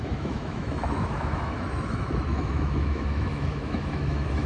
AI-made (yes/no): yes